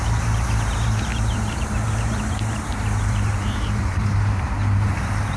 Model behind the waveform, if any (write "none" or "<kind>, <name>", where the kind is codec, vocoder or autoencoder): vocoder, BigVGAN v2